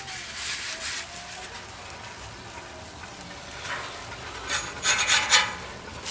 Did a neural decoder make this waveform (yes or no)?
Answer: no